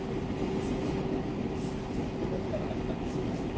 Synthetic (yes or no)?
no